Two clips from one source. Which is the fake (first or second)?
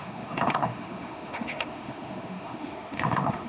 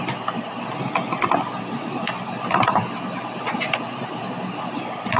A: first